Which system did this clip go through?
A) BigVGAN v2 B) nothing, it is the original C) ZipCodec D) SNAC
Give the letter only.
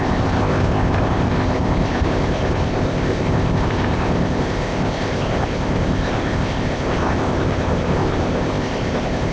C